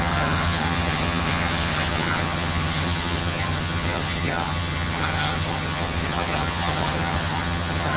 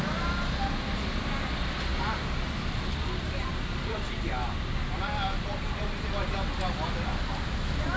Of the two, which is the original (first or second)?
second